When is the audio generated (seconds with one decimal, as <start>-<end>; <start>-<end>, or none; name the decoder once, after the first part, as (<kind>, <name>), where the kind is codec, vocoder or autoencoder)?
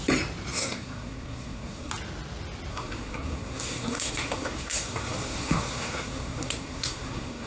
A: 0.5-1.9 (codec, SNAC); 2.7-7.5